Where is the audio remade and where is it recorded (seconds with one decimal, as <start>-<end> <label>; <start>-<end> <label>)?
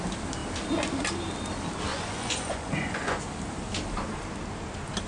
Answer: 0.0-1.9 recorded; 1.9-3.2 remade; 3.2-5.1 recorded